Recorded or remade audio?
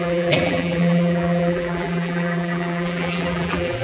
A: remade